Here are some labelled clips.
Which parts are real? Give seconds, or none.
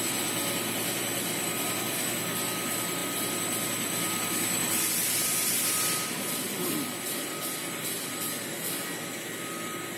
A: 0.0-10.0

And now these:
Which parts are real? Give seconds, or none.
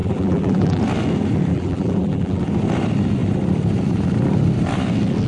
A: 0.8-1.5; 2.4-5.3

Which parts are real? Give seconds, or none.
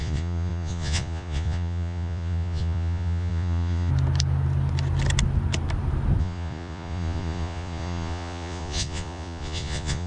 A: 3.9-6.2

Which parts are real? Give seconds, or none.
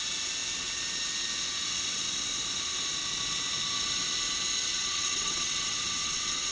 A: 0.0-4.7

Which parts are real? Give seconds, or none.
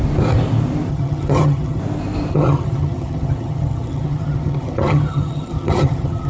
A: 0.0-0.9; 1.8-2.3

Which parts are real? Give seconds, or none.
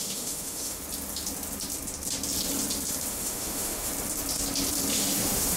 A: 0.8-3.1; 3.9-4.9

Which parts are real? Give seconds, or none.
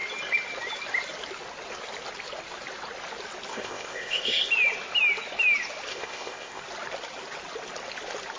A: 0.0-3.5; 4.5-5.9; 6.6-8.4